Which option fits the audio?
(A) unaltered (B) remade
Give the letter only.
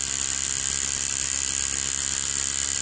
A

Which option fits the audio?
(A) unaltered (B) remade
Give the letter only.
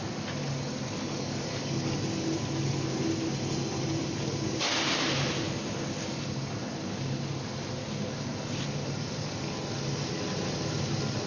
A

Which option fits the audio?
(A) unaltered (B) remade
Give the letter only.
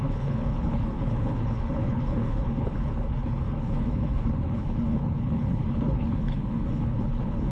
B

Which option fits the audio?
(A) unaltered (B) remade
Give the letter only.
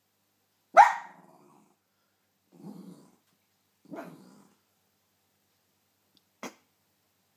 A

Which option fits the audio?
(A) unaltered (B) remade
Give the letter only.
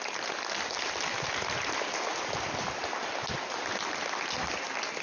A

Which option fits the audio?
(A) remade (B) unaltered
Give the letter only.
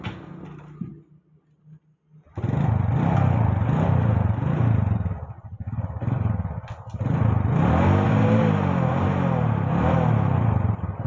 B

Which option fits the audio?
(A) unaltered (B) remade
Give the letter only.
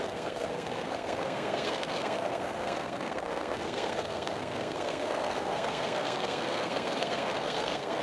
B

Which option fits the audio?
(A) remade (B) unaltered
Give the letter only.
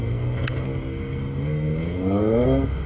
A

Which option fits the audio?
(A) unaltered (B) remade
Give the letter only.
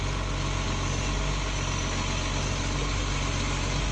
A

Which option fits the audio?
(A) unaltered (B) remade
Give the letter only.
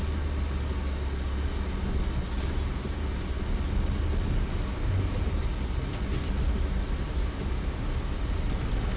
A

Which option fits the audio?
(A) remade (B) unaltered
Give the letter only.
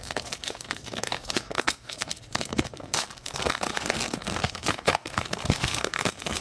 A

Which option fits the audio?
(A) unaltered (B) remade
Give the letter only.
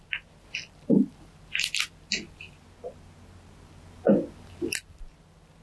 A